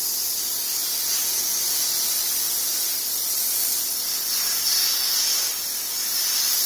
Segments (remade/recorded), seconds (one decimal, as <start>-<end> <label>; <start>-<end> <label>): 0.0-6.7 recorded